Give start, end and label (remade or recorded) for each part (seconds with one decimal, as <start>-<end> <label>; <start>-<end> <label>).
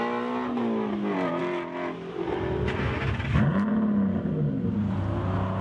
0.0-5.6 recorded